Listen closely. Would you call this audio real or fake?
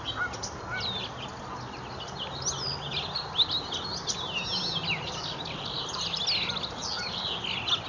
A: real